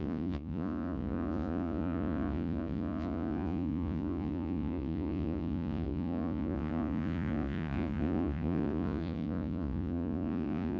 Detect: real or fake fake